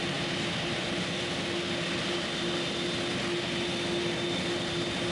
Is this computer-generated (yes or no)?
no